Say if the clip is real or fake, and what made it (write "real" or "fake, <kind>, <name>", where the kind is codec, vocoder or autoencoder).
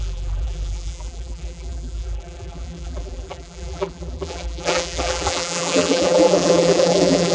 fake, vocoder, BigVGAN v2